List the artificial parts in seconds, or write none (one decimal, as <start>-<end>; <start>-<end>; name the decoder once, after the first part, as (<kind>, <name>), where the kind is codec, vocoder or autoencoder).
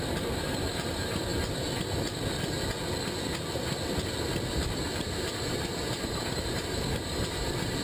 0.0-1.3 (vocoder, BigVGAN v2); 4.5-7.8